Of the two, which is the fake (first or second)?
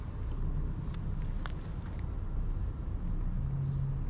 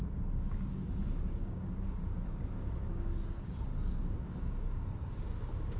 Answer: second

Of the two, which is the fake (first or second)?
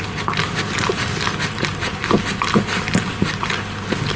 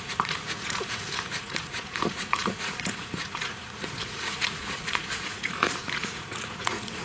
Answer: second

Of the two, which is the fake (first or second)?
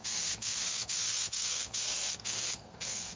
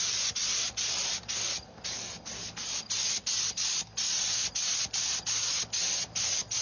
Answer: first